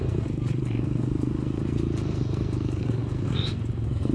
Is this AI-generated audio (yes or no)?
yes